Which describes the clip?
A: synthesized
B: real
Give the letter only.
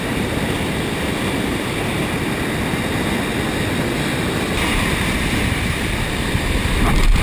A